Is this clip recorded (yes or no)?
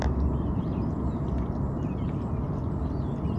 yes